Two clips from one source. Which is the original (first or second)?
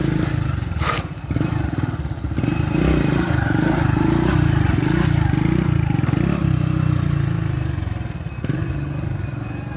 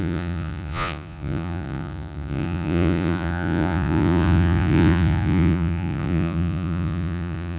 first